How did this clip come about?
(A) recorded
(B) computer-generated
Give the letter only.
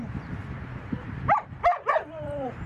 B